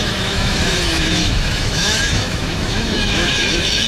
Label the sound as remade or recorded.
remade